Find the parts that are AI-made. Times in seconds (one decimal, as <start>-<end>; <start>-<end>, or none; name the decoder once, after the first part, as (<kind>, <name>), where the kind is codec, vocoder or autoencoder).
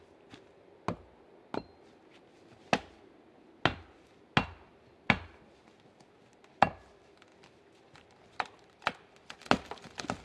7.3-9.4 (vocoder, BigVGAN v2)